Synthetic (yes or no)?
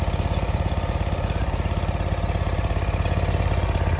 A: no